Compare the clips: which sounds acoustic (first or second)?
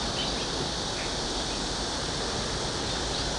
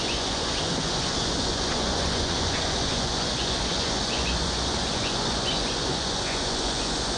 first